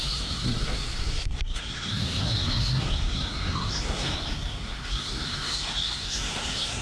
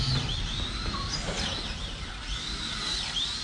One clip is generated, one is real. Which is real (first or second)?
second